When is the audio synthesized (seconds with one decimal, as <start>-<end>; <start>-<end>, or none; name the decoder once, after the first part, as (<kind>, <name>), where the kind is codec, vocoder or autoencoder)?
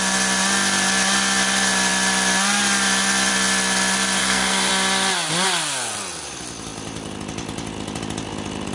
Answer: 4.2-4.7 (codec, SNAC)